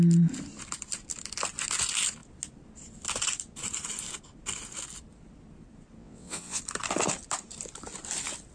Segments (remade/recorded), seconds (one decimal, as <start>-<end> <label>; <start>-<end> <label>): 0.0-6.0 recorded; 6.0-6.6 remade; 6.6-8.5 recorded